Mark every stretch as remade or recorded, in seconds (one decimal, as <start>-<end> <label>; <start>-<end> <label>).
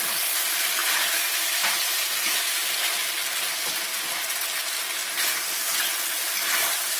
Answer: 0.0-0.8 recorded; 0.8-2.7 remade; 2.7-3.5 recorded; 3.5-4.0 remade; 4.0-5.0 recorded; 5.0-5.5 remade; 5.5-7.0 recorded